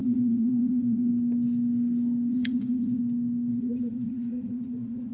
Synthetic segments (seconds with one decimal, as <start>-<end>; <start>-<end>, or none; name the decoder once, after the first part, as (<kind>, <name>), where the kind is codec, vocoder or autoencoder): 0.0-1.1 (vocoder, Vocos); 2.3-3.0; 3.5-5.1